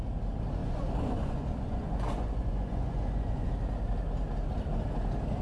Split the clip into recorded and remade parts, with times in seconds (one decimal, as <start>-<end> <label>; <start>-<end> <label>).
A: 0.0-0.6 recorded; 0.6-3.5 remade; 3.5-5.4 recorded